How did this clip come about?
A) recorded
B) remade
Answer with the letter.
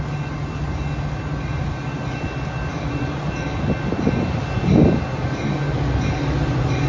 A